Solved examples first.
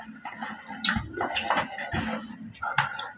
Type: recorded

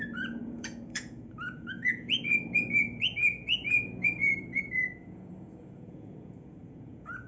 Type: remade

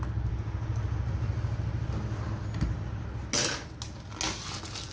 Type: recorded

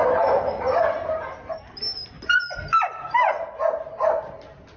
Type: recorded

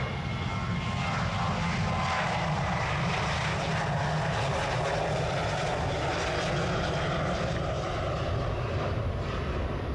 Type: recorded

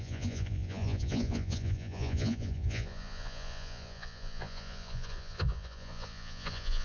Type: remade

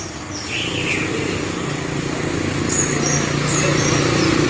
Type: recorded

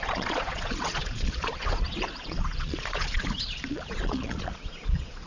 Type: remade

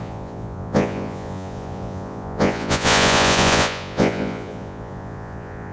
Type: remade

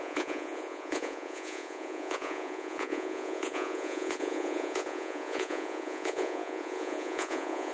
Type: remade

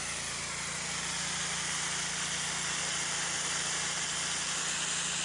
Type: recorded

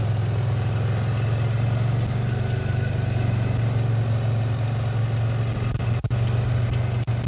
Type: recorded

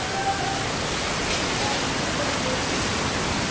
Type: recorded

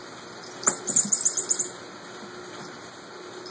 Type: recorded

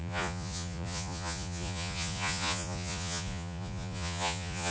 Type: remade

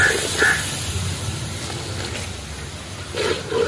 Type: recorded